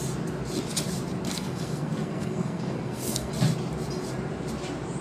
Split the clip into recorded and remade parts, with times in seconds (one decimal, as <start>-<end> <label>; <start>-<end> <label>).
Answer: 0.0-1.3 recorded; 1.3-3.3 remade; 3.3-5.0 recorded